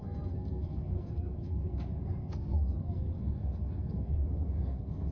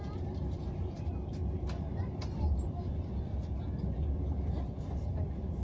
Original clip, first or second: second